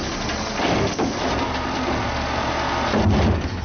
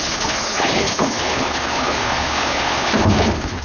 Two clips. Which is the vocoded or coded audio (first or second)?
second